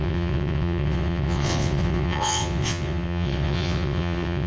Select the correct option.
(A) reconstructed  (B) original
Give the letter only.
A